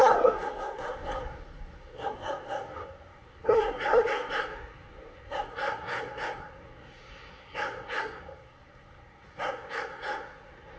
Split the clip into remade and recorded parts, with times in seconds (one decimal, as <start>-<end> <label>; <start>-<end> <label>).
0.0-10.8 remade